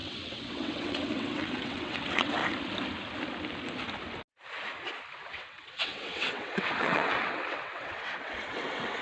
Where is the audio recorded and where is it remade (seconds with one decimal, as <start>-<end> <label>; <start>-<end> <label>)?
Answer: 0.0-2.4 remade; 2.4-5.3 recorded; 5.3-9.0 remade